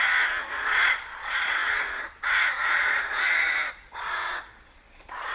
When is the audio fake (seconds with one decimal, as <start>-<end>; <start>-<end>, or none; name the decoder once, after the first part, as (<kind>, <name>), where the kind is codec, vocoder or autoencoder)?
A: 0.0-5.3 (vocoder, Vocos)